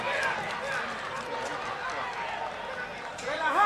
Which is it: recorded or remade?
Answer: recorded